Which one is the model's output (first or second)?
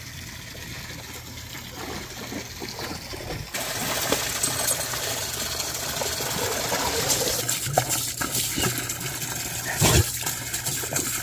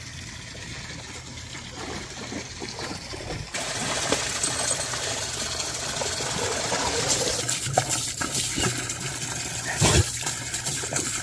second